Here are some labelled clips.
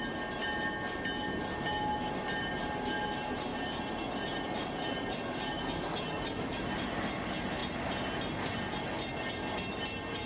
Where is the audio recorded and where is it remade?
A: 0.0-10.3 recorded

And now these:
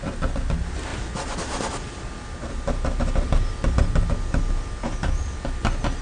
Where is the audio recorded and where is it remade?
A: 0.0-6.0 recorded

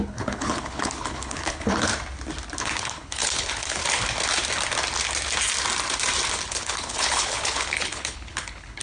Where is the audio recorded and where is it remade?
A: 0.0-1.9 remade; 1.9-2.6 recorded; 2.6-3.8 remade; 3.8-6.5 recorded; 6.5-8.8 remade

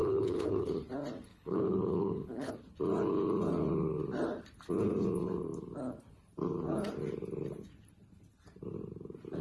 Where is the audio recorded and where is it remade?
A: 0.0-0.8 remade; 0.8-1.3 recorded; 1.3-2.5 remade; 2.5-9.4 recorded

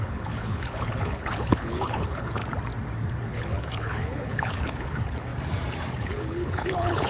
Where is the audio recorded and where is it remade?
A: 0.0-2.4 remade; 2.4-3.2 recorded; 3.2-5.3 remade; 5.3-5.9 recorded; 5.9-7.1 remade

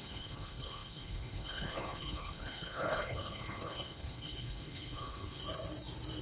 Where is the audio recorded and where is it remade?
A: 0.0-5.4 remade; 5.4-6.2 recorded

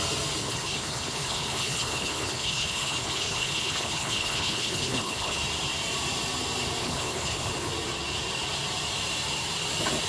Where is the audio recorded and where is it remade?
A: 0.0-0.4 recorded; 0.4-5.4 remade; 5.4-6.8 recorded; 6.8-7.7 remade; 7.7-10.1 recorded

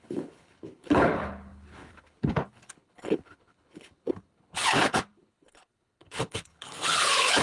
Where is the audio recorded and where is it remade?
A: 0.0-7.4 remade